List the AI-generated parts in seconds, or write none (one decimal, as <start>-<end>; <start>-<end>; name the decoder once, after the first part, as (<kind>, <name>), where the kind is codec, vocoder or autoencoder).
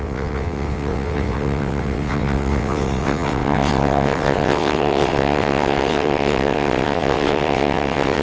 0.0-8.2 (vocoder, WaveNeXt)